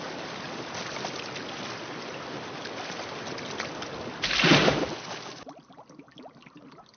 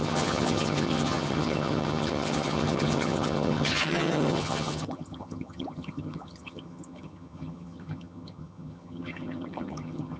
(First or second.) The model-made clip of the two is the second